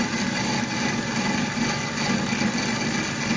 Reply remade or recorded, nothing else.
recorded